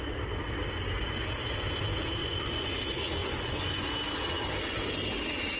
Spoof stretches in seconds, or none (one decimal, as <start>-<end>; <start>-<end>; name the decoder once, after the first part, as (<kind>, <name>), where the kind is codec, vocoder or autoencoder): 2.2-2.7 (vocoder, Vocos); 3.2-3.9